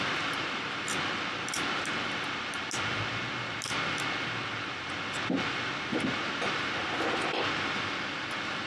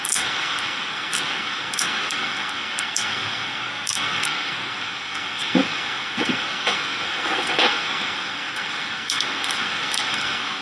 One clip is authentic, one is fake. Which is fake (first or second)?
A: second